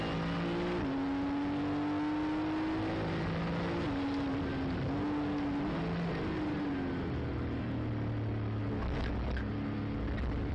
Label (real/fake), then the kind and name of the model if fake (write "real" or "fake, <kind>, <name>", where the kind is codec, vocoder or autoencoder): real